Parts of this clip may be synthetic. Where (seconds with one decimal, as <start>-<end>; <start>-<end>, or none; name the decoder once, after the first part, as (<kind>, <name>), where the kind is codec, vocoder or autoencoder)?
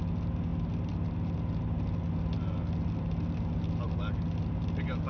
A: none